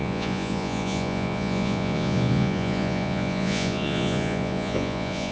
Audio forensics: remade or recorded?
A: remade